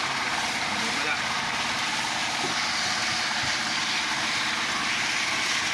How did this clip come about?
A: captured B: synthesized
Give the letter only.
A